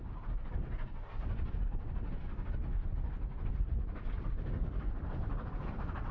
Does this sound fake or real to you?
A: real